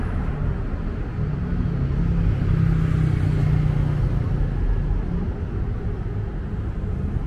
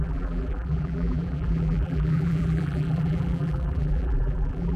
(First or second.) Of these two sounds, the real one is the first